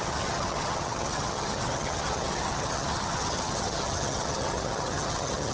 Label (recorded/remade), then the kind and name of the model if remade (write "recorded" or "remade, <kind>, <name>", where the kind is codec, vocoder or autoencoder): remade, vocoder, HiFi-GAN